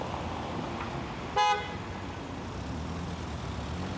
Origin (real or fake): real